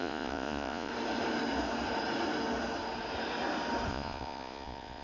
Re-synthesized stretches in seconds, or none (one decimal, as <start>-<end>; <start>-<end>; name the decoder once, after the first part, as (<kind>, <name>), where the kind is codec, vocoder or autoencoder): 0.0-0.9 (vocoder, Vocos); 3.9-5.0